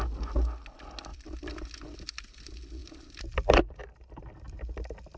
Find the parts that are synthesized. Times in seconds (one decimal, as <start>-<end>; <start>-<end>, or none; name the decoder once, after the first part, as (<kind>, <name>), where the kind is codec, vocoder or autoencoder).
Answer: 1.1-2.4 (vocoder, BigVGAN v2); 2.8-4.8